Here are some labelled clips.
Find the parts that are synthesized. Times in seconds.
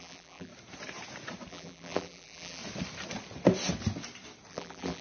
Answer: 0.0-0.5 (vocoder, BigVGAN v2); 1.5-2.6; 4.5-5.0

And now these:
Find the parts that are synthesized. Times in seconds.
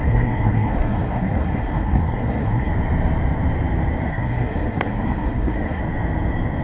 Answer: 0.0-2.7 (codec, SNAC); 4.1-5.8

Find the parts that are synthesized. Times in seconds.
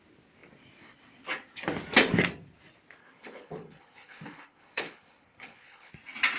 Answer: 3.0-5.9 (codec, HILCodec)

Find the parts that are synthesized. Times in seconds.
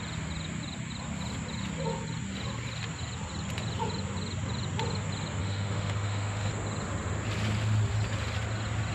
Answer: 5.4-6.5 (autoencoder, DAC-VAE)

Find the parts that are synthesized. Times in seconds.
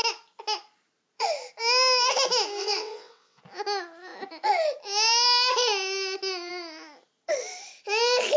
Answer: 2.6-3.4 (vocoder, WaveNeXt)